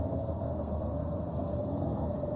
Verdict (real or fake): fake